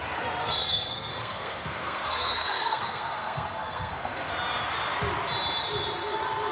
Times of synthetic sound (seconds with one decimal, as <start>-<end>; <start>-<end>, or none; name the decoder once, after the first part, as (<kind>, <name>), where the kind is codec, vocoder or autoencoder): 0.4-4.3 (codec, SNAC)